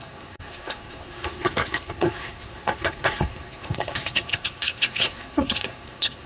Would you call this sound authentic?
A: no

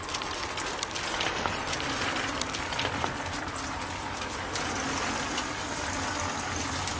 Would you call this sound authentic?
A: yes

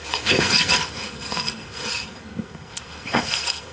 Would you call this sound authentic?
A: no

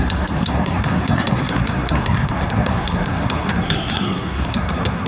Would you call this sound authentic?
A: no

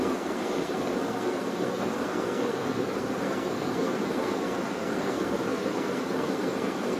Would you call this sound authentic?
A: no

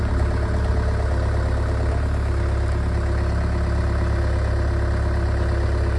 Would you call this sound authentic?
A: yes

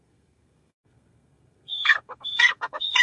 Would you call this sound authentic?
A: no